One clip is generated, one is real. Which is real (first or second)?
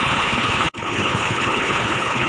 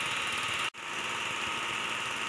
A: second